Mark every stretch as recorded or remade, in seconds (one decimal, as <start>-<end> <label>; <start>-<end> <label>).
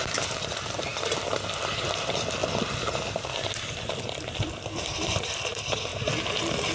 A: 0.0-2.4 remade; 2.4-4.4 recorded; 4.4-5.9 remade; 5.9-6.7 recorded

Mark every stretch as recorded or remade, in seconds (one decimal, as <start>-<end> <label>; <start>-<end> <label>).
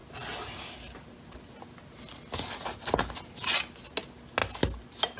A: 0.0-5.2 recorded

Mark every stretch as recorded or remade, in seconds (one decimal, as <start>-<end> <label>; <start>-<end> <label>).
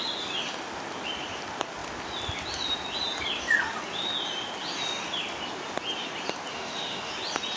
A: 0.0-6.5 recorded; 6.5-7.1 remade; 7.1-7.6 recorded